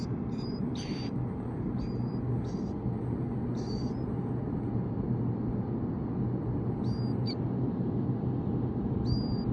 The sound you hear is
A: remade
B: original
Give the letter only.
B